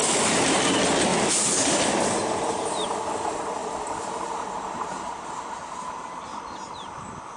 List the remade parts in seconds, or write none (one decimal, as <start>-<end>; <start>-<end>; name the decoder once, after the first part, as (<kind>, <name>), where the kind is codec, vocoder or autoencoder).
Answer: 1.1-2.1 (vocoder, BigVGAN v2)